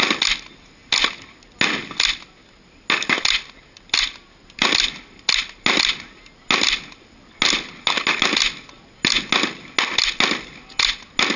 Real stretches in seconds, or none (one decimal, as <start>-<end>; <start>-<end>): 0.0-11.4